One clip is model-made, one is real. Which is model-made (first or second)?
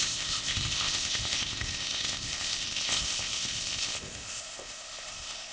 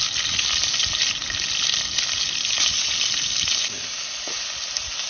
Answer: first